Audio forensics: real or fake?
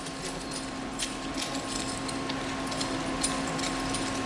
real